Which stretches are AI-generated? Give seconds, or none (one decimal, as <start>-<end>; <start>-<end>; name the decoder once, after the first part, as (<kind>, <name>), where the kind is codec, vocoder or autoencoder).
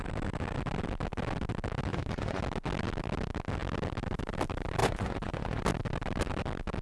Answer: 1.9-2.4 (vocoder, Vocos); 4.8-5.6